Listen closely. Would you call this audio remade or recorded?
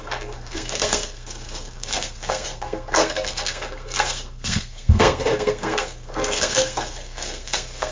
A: remade